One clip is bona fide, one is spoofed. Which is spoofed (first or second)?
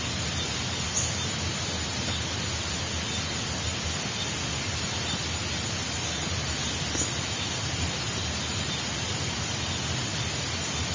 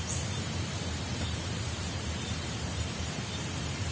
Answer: second